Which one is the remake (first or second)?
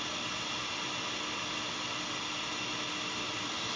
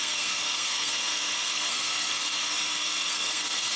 second